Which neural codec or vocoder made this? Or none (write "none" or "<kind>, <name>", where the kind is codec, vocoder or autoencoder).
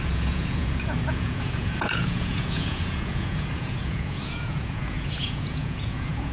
vocoder, Vocos